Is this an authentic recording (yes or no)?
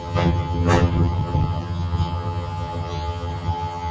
no